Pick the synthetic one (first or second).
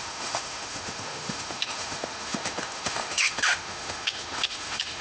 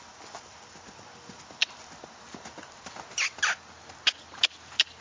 first